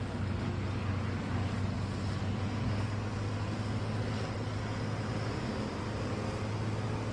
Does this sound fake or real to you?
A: real